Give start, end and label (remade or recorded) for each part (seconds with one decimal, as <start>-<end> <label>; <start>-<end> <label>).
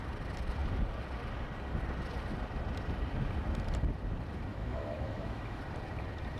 0.0-4.5 recorded; 4.5-5.6 remade; 5.6-6.4 recorded